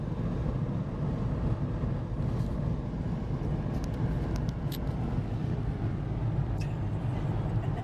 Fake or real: real